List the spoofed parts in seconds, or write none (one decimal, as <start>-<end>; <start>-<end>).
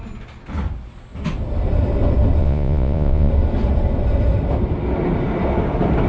2.4-3.3